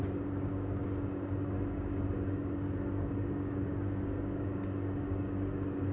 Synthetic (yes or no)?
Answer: yes